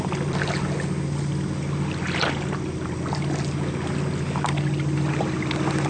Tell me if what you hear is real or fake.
real